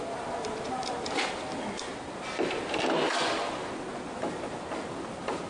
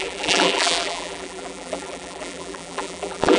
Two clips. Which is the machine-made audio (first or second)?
second